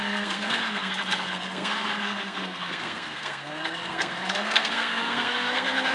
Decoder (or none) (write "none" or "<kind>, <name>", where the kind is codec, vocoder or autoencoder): codec, SNAC